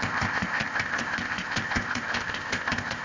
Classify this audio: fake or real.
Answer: fake